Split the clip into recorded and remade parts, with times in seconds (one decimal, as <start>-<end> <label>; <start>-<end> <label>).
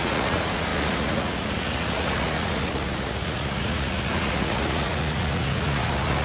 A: 0.0-6.2 remade